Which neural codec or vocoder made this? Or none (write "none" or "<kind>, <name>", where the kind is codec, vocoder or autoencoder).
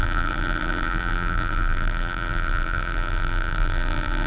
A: vocoder, BigVGAN v2